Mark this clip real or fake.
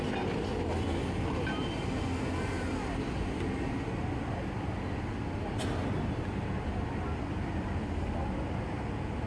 real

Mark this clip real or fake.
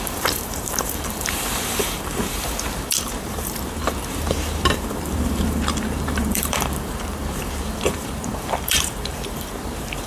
fake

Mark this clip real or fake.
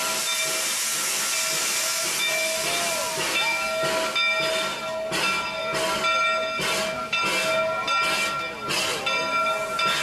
real